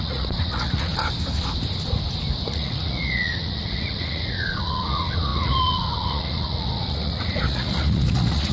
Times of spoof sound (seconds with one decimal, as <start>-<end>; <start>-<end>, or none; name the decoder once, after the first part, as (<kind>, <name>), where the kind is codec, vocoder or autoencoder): 0.0-0.9 (vocoder, Vocos); 2.5-8.5